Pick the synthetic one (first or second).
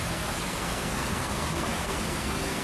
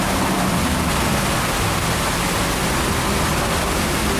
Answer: first